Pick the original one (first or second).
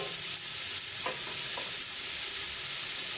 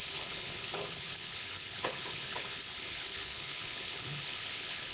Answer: first